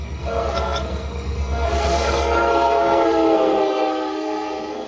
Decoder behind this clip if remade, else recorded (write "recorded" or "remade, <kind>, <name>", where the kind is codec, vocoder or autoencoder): remade, codec, SNAC